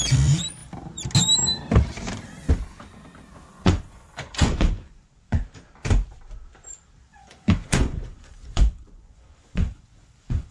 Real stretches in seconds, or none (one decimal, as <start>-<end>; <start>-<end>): 0.0-3.5; 5.4-7.1